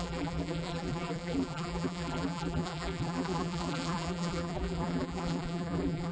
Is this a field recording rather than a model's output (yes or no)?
no